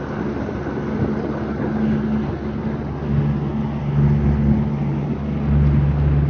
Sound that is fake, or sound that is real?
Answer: real